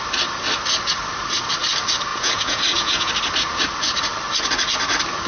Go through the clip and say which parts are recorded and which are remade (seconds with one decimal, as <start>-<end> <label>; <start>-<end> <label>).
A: 0.0-2.1 recorded; 2.1-3.1 remade; 3.1-5.3 recorded